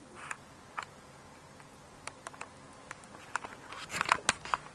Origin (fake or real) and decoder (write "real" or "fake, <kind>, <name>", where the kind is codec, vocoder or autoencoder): real